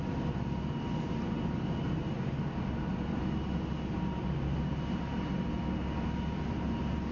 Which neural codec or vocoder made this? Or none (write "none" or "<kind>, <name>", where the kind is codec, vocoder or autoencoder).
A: none